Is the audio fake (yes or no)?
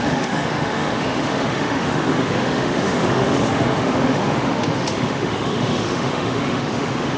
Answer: yes